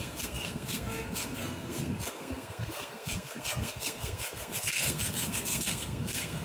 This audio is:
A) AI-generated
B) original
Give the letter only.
A